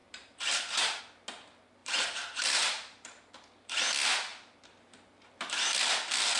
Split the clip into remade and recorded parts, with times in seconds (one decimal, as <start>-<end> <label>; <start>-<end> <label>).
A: 0.0-1.0 remade; 1.0-1.8 recorded; 1.8-3.3 remade; 3.3-6.4 recorded